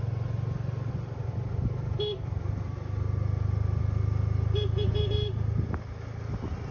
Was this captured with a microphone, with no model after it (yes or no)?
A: yes